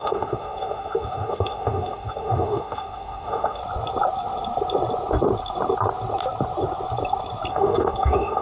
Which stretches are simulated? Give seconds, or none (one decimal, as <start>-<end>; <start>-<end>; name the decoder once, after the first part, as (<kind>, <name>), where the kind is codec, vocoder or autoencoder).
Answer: 0.0-3.6 (autoencoder, DAC-VAE); 7.5-8.4